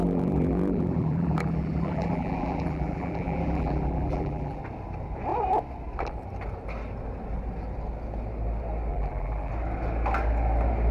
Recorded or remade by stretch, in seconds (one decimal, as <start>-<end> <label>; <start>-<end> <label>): 0.0-4.6 remade; 4.6-8.9 recorded; 8.9-9.5 remade; 9.5-10.9 recorded